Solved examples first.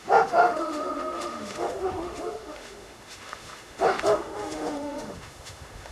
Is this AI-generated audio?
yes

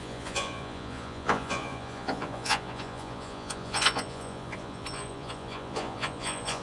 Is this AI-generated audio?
yes